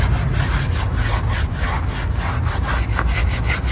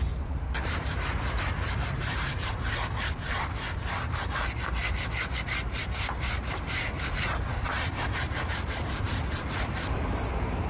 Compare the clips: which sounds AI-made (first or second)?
second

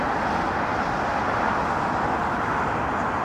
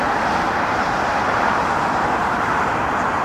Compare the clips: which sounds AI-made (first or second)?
second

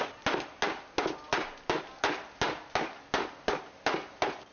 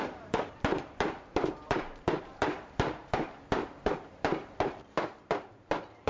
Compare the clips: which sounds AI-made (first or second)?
second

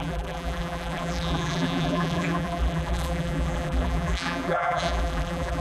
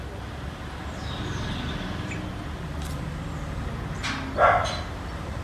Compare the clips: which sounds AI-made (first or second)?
first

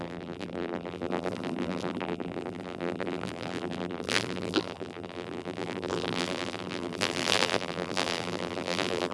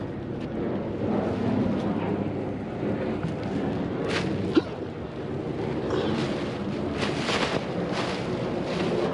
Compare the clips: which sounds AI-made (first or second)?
first